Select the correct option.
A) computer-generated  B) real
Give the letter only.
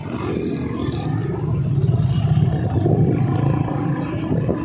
B